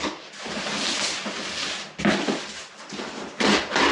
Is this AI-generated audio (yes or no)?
no